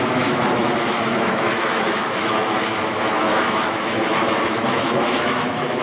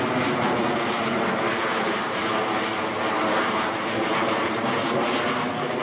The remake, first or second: first